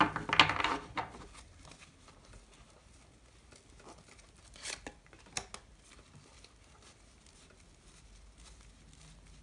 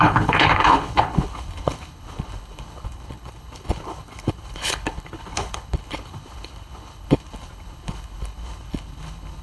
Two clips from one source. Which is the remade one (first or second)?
second